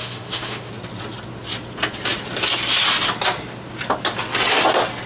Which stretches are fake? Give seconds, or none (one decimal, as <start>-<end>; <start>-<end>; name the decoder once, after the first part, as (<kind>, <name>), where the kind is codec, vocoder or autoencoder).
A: 0.0-0.7 (autoencoder, DAC-VAE)